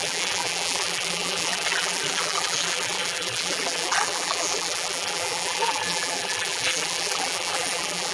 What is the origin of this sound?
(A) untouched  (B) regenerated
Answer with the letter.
B